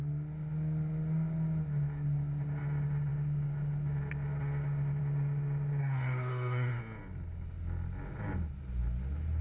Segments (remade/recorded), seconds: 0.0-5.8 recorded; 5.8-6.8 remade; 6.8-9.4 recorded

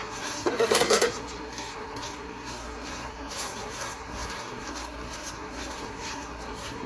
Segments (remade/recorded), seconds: 0.0-6.9 remade